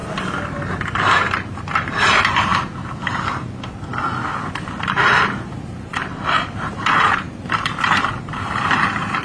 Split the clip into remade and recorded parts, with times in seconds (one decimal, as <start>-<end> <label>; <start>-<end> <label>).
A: 0.0-1.1 recorded; 1.1-2.5 remade; 2.5-4.8 recorded; 4.8-9.2 remade